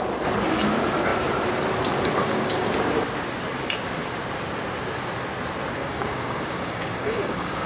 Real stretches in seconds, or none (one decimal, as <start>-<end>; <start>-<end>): 0.0-2.2; 2.7-5.8